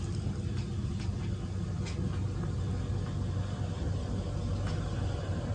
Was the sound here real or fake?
real